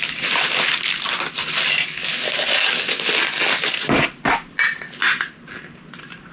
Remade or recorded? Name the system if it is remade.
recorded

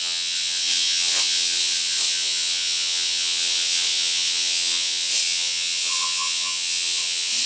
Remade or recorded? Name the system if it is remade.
remade, vocoder, WaveNeXt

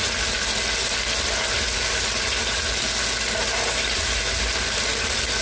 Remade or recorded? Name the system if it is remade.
recorded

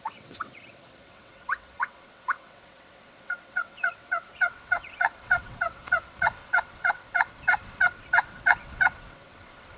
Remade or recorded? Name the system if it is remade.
remade, vocoder, WaveNeXt